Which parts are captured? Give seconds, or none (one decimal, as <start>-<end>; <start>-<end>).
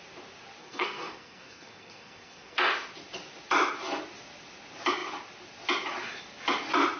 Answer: 0.0-0.6; 2.7-7.0